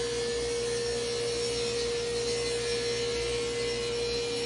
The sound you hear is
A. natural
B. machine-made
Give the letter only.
A